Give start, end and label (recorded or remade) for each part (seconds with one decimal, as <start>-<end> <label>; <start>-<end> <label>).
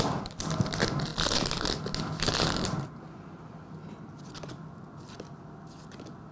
0.0-6.3 recorded